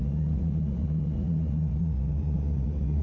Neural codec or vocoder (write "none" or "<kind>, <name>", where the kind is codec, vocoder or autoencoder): vocoder, Vocos